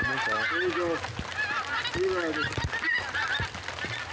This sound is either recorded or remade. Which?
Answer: recorded